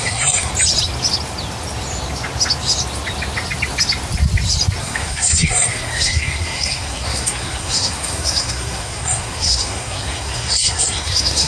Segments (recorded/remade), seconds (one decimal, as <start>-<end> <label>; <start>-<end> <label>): 0.0-0.5 remade; 0.5-4.8 recorded; 4.8-11.5 remade